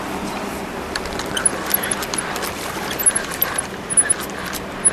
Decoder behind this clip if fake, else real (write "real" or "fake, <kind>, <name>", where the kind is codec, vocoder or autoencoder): real